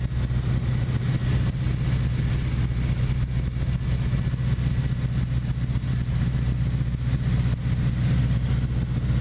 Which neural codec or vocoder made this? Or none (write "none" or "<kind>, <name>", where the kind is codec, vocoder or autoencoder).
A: none